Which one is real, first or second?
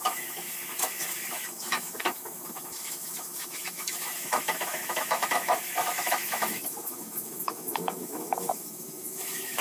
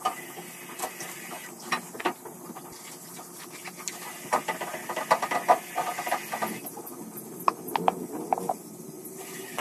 second